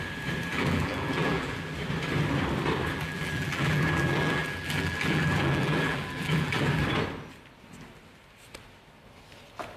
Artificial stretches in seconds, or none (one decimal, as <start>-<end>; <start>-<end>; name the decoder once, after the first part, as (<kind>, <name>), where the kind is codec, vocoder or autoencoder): 0.5-1.7 (vocoder, BigVGAN v2); 2.9-6.8